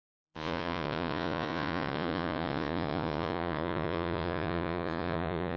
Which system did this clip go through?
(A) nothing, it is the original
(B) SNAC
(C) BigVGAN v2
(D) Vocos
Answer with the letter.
D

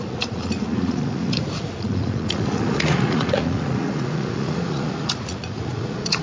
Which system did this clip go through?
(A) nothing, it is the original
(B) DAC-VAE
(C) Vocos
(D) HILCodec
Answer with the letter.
C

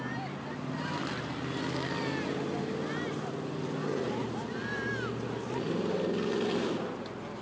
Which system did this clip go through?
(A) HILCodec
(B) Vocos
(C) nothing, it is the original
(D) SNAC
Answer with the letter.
C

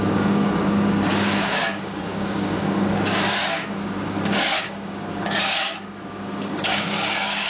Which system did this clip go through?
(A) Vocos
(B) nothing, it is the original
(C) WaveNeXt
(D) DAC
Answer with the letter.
D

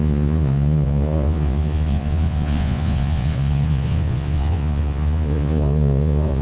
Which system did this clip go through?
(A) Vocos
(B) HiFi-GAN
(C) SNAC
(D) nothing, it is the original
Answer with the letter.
A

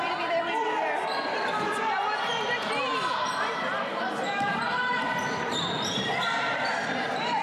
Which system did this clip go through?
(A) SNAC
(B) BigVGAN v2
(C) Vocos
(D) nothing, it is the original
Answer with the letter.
B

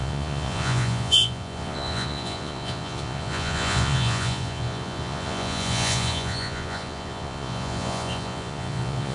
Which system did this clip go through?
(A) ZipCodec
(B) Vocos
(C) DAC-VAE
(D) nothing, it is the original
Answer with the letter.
B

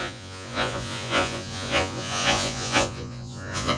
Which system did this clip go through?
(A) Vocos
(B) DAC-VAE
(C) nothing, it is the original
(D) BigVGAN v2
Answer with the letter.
A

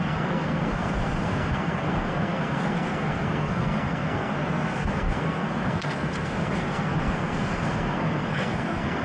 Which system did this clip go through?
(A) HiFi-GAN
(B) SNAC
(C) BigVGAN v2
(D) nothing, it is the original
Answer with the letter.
B